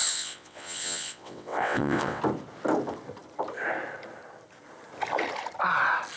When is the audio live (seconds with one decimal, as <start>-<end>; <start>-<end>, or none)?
2.2-6.2